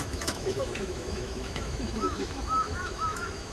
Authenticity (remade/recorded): remade